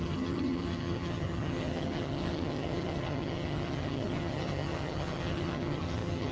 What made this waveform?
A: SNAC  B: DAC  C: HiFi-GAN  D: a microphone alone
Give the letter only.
C